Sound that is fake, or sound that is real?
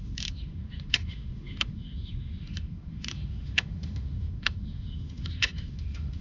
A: fake